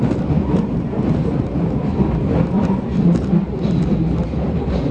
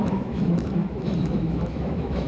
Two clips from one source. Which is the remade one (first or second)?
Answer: second